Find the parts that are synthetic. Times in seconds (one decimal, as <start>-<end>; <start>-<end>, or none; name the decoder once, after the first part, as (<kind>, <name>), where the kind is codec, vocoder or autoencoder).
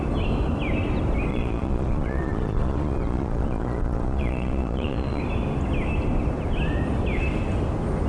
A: 1.3-5.2 (vocoder, Vocos)